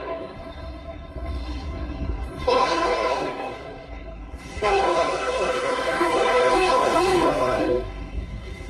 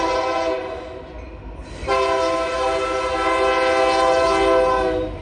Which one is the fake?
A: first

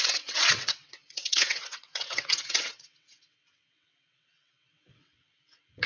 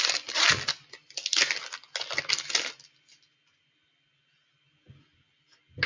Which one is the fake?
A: first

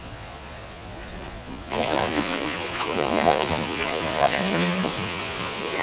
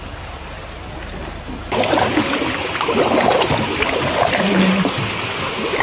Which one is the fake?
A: first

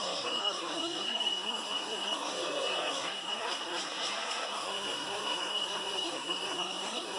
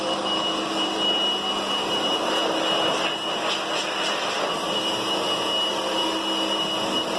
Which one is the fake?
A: first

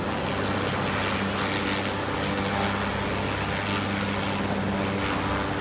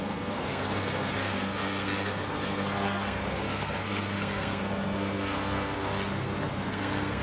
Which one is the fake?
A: second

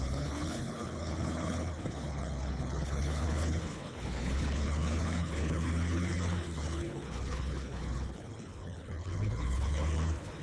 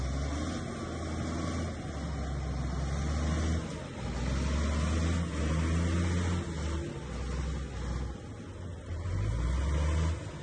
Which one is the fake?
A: first